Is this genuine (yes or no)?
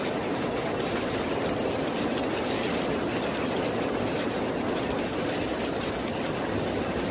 yes